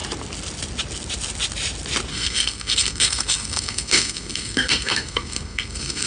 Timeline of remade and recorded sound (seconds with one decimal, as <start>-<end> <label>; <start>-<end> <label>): 0.0-2.1 recorded; 2.1-6.1 remade